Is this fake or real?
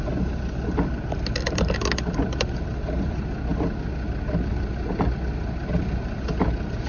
real